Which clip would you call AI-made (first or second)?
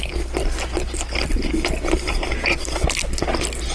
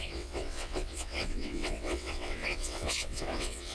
second